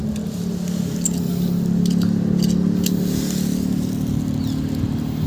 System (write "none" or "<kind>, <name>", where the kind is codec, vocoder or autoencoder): none